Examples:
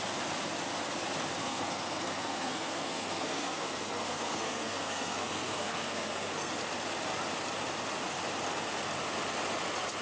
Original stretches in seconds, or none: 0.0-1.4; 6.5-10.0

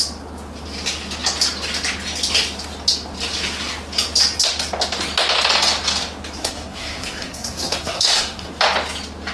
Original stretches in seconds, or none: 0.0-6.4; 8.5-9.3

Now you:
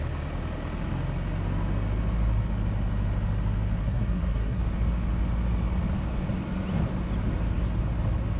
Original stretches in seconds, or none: 0.0-3.8; 4.6-8.4

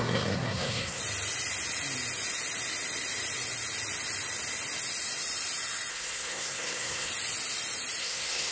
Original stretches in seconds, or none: 1.0-5.9; 7.1-8.0

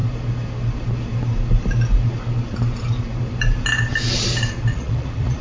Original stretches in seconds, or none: 0.0-4.7

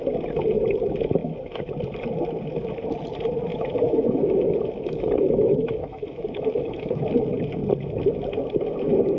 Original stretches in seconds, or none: 0.0-1.2; 1.7-3.5; 7.0-9.2

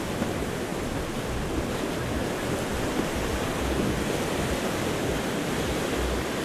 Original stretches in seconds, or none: 0.0-6.4

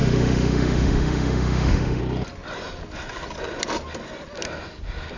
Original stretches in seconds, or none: 2.0-5.2